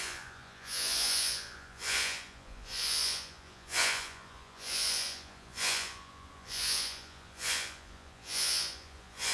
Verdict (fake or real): fake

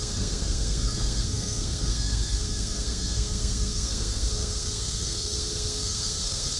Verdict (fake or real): fake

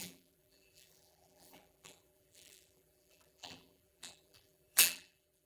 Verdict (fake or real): fake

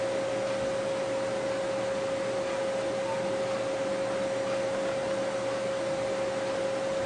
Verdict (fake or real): real